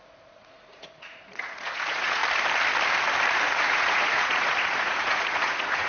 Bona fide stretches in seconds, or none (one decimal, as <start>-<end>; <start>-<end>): 2.2-3.4